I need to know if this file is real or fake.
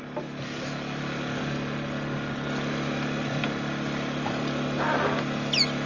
real